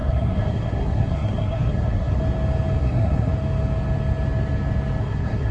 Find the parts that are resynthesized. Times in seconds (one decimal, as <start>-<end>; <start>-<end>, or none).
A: 0.0-2.2; 2.8-3.3; 5.0-5.5

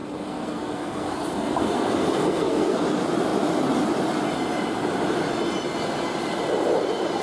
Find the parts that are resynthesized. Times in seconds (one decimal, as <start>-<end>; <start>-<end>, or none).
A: 0.0-2.8